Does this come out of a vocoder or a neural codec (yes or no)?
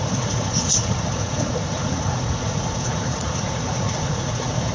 yes